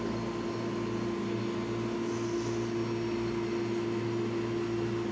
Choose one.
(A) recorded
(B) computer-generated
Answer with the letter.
A